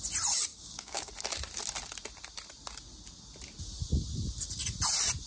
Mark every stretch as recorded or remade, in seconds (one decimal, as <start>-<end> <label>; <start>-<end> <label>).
0.0-0.5 recorded; 0.5-1.1 remade; 1.1-5.3 recorded